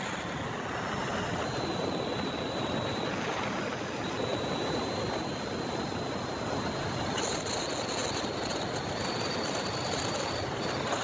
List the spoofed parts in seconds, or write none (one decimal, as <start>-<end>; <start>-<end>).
none